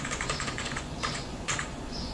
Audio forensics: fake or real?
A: fake